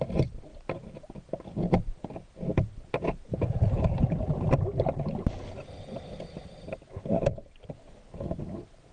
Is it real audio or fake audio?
real